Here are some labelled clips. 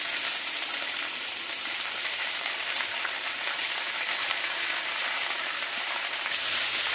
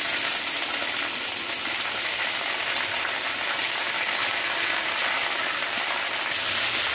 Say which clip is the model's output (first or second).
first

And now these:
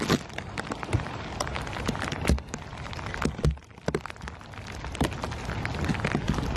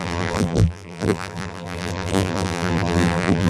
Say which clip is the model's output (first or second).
second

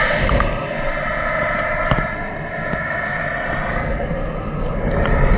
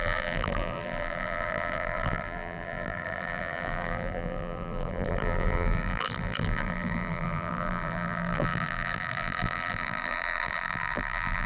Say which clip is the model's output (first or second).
second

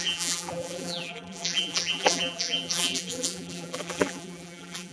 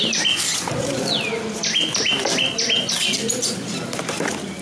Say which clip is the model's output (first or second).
first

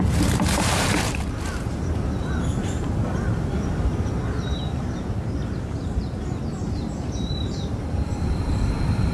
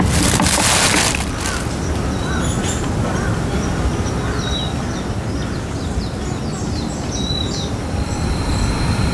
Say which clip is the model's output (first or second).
first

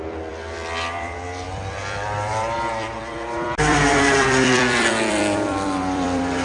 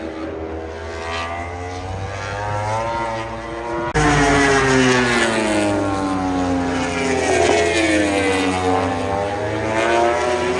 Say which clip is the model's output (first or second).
first